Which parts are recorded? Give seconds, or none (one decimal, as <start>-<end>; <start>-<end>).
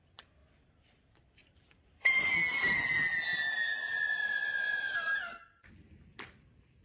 0.0-0.4; 2.3-6.8